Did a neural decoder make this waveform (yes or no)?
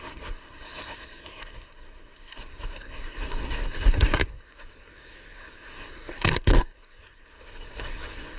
yes